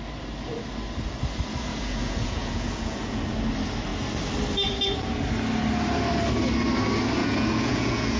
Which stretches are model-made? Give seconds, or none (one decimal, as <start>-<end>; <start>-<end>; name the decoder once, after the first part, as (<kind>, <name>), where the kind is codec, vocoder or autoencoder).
1.7-3.2 (vocoder, Vocos); 7.2-8.2